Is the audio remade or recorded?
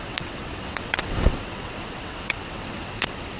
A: remade